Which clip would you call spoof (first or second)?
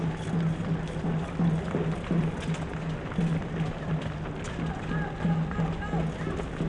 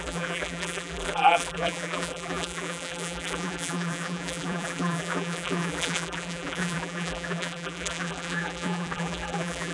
second